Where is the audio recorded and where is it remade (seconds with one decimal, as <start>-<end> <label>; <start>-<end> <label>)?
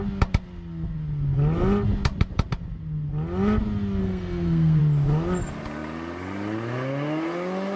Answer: 0.0-4.0 recorded; 4.0-4.8 remade; 4.8-7.8 recorded